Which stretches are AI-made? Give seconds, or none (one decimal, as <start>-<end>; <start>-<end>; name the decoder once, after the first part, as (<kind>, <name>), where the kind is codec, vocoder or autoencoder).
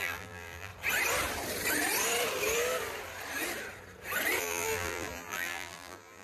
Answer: 0.0-0.7 (vocoder, BigVGAN v2); 4.4-6.2